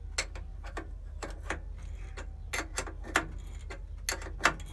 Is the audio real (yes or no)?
yes